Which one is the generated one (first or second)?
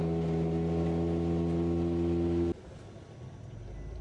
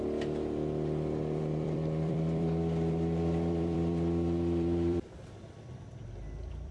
second